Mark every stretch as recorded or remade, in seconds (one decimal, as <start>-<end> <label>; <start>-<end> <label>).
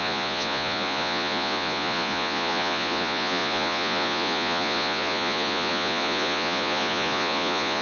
0.0-7.8 remade